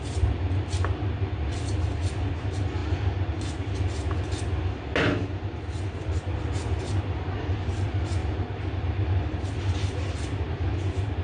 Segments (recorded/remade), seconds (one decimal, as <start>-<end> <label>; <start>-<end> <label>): 0.0-11.2 recorded